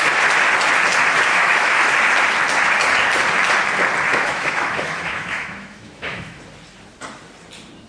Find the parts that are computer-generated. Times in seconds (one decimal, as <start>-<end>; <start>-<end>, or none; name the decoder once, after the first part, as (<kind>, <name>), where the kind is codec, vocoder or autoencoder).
1.3-1.9 (autoencoder, DAC-VAE); 4.1-6.4